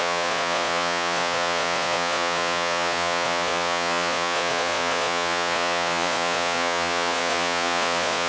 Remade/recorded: remade